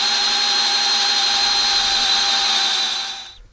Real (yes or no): yes